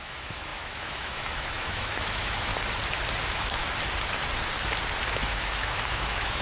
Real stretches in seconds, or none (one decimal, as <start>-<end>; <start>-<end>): 2.5-3.2; 3.6-5.1